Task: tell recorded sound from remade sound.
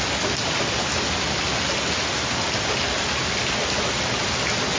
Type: recorded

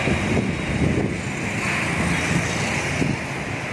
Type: recorded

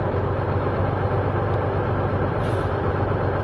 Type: recorded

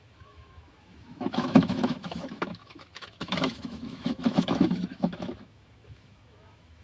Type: remade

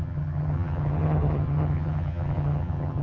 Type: remade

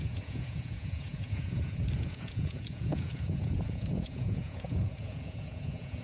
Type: remade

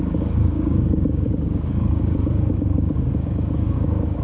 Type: remade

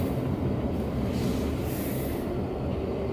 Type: recorded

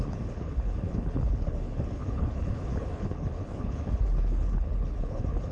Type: remade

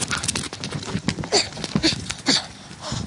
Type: recorded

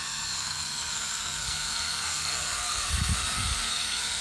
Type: remade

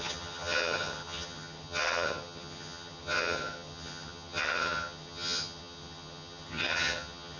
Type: remade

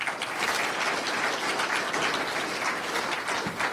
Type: recorded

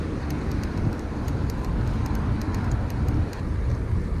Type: recorded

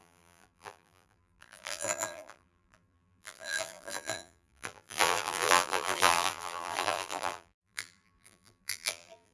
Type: remade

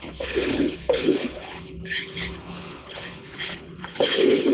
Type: remade